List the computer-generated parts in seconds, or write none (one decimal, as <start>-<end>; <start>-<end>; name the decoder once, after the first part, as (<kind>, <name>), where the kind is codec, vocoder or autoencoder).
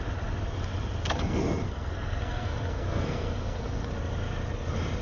1.0-3.9 (codec, SNAC)